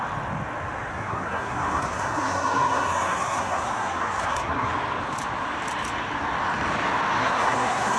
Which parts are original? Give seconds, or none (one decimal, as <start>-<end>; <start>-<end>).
0.0-0.9; 4.7-7.2